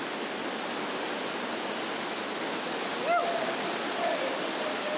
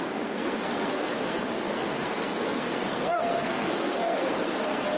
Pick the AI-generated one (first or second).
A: second